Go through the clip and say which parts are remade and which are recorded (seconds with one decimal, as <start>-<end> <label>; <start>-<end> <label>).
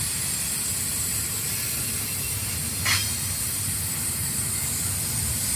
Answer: 0.0-0.7 recorded; 0.7-1.7 remade; 1.7-3.0 recorded; 3.0-5.6 remade